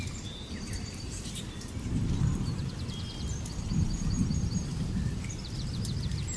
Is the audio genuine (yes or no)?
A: no